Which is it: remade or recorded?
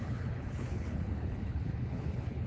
remade